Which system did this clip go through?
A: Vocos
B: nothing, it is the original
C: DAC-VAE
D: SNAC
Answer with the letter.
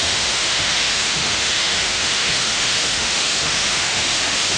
C